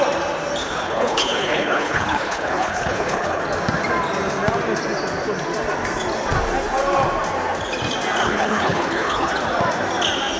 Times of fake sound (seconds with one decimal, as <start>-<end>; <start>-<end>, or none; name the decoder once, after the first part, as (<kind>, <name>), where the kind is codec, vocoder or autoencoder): 0.6-3.4 (codec, HILCodec); 8.2-9.3